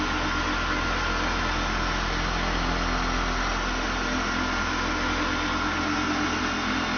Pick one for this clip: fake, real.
real